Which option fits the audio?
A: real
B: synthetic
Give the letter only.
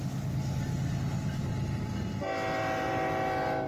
A